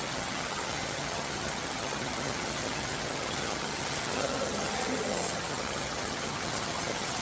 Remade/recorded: remade